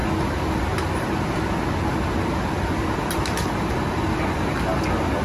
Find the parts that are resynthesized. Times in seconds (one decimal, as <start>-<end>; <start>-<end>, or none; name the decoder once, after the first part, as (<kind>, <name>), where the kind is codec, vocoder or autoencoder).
none